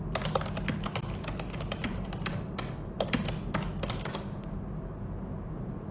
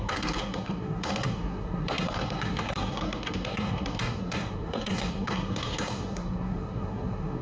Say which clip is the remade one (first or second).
second